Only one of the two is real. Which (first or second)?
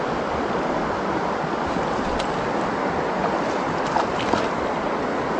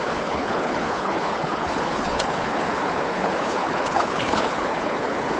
first